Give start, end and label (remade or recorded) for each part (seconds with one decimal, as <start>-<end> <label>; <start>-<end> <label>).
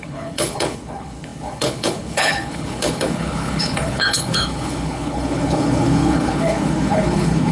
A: 0.0-7.5 remade